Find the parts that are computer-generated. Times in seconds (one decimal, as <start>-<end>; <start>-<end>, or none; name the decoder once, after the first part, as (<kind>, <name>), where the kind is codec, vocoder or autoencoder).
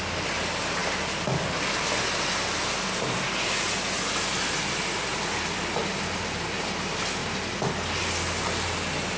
none